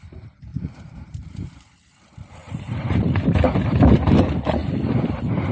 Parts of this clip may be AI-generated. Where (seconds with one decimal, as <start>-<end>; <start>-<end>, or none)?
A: 0.5-1.6; 2.4-3.4